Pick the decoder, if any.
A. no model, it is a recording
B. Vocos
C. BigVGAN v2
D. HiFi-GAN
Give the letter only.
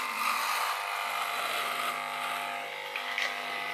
A